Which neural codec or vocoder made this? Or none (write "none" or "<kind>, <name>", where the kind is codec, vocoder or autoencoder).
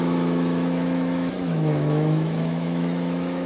autoencoder, DAC-VAE